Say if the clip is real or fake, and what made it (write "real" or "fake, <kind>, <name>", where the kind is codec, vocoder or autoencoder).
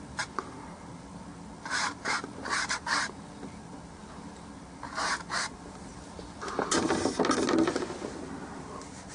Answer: real